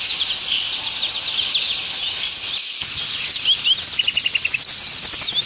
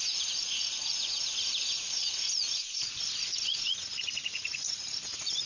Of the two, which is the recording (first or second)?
first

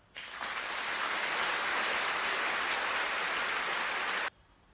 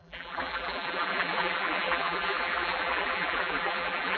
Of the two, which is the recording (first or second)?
first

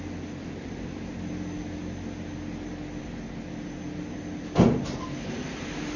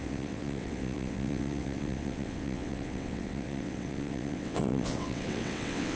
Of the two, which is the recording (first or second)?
first